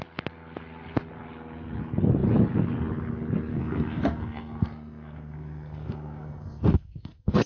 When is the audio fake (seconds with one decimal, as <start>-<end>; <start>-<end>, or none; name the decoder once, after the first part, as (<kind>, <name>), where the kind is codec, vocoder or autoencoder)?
3.5-7.5 (codec, SNAC)